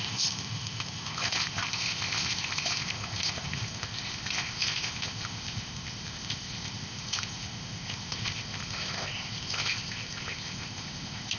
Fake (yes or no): yes